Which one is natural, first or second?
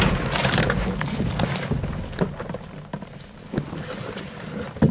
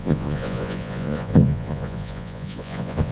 first